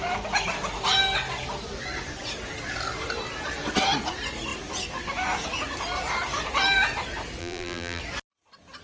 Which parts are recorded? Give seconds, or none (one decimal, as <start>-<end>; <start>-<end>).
0.0-7.4; 8.0-8.8